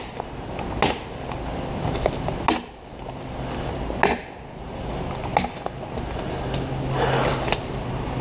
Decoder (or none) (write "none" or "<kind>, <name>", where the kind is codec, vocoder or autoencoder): none